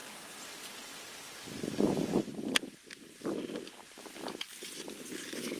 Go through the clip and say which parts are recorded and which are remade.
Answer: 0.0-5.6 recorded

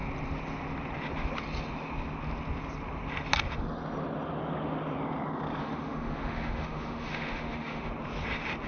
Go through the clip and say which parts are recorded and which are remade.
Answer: 0.0-5.6 recorded; 5.6-7.9 remade; 7.9-8.7 recorded

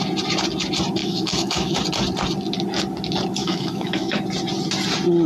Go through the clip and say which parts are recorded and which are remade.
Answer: 0.0-1.0 recorded; 1.0-1.8 remade; 1.8-3.4 recorded; 3.4-4.2 remade; 4.2-5.3 recorded

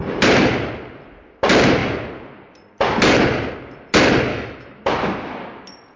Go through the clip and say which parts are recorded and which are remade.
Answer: 0.0-4.3 recorded; 4.3-4.8 remade; 4.8-6.0 recorded